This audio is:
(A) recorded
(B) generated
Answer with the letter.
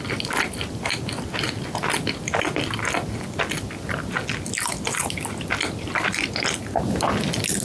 A